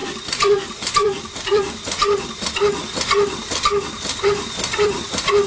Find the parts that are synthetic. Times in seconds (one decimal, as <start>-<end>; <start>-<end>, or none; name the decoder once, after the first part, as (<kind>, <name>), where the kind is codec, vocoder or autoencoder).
0.0-2.0 (vocoder, BigVGAN v2); 4.0-5.5